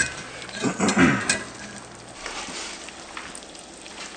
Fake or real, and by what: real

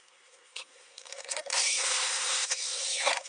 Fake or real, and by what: fake, codec, SNAC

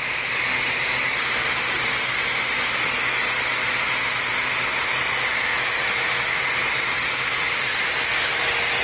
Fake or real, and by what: real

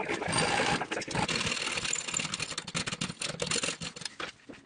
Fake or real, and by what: real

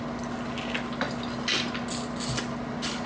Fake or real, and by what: real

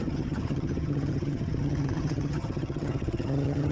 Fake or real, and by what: fake, vocoder, HiFi-GAN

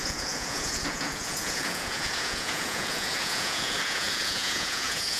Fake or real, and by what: fake, vocoder, Vocos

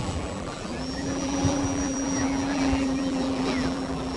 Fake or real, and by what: fake, vocoder, BigVGAN v2